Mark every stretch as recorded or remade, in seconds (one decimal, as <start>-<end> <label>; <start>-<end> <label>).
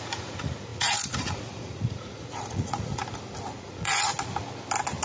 0.0-3.0 remade; 3.0-3.6 recorded; 3.6-4.1 remade; 4.1-5.0 recorded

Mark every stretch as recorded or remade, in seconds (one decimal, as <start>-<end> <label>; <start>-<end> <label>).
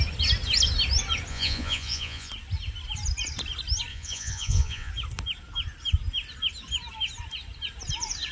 0.0-1.3 recorded; 1.3-2.3 remade; 2.3-3.9 recorded; 3.9-4.9 remade; 4.9-8.3 recorded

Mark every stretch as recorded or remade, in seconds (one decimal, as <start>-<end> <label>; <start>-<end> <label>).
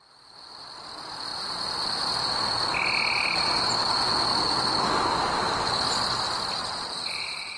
0.0-6.6 recorded; 6.6-7.6 remade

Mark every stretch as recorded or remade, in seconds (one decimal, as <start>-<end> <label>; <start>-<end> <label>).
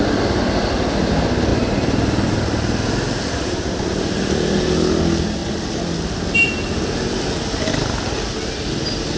0.0-9.2 recorded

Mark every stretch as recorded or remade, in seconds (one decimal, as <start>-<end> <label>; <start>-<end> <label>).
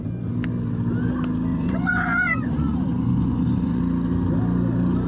0.0-1.5 recorded; 1.5-3.8 remade; 3.8-5.1 recorded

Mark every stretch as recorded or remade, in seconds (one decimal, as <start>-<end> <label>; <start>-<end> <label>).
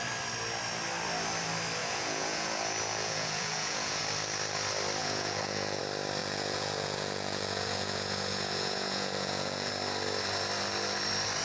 0.0-1.8 recorded; 1.8-4.0 remade; 4.0-5.0 recorded; 5.0-5.8 remade; 5.8-6.2 recorded; 6.2-9.7 remade; 9.7-11.4 recorded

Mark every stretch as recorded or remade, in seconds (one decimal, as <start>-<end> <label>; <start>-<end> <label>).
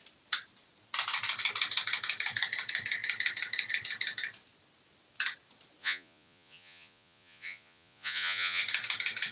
0.0-5.8 recorded; 5.8-8.6 remade; 8.6-9.3 recorded